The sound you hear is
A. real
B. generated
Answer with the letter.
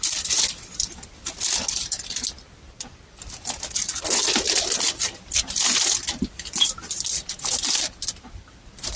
A